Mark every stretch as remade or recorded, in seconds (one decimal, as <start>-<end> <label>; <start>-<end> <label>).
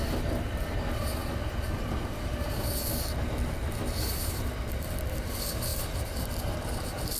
0.0-7.2 recorded